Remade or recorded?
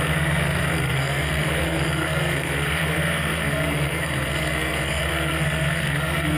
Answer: remade